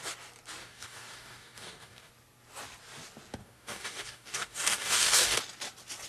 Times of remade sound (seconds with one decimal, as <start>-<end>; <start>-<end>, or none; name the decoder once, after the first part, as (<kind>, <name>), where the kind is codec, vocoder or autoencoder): 0.6-2.1 (codec, DAC); 3.4-5.4